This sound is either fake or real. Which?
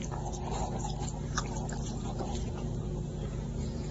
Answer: real